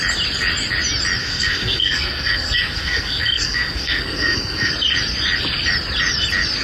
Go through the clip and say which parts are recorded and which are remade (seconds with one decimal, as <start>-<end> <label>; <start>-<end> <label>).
0.0-1.2 recorded; 1.2-4.7 remade; 4.7-6.6 recorded